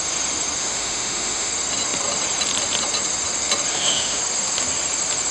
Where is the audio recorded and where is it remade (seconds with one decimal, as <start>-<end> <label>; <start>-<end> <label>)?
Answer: 0.0-0.6 recorded; 0.6-1.5 remade; 1.5-3.7 recorded; 3.7-4.2 remade; 4.2-5.3 recorded